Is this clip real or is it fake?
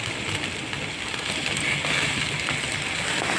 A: real